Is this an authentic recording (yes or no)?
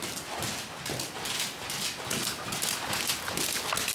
yes